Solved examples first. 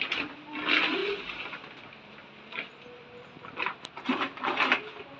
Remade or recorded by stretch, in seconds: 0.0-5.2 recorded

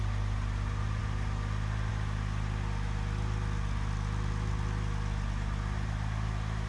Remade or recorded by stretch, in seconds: 0.0-6.7 recorded

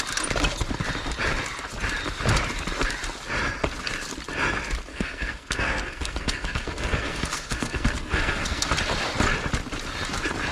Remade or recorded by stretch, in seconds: 0.0-4.9 recorded; 4.9-8.7 remade; 8.7-10.5 recorded

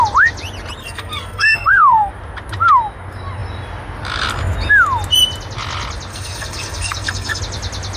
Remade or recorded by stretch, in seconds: 0.0-0.8 recorded; 0.8-2.1 remade; 2.1-6.1 recorded; 6.1-7.4 remade; 7.4-8.0 recorded